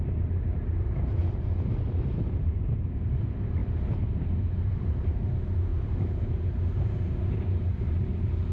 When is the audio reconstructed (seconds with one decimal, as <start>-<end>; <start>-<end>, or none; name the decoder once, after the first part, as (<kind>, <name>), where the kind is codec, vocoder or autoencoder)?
0.0-1.2 (vocoder, BigVGAN v2); 2.1-3.6; 4.1-8.5